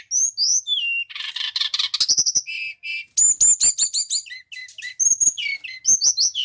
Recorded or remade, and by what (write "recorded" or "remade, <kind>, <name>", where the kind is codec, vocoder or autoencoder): recorded